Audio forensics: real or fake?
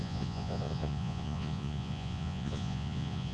fake